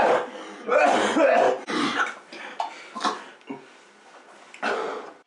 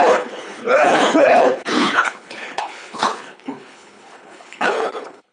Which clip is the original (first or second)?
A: first